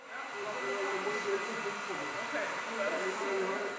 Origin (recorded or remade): recorded